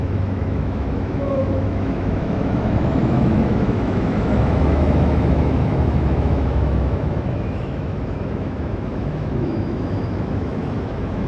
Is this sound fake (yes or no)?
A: yes